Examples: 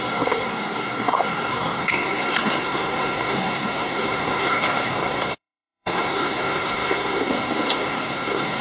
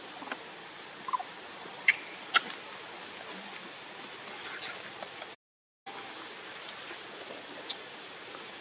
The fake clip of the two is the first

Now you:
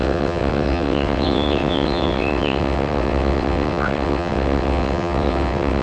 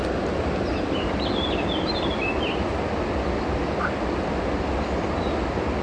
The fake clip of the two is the first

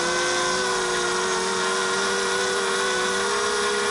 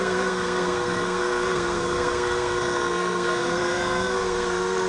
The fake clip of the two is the second